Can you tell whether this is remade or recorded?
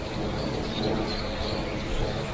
remade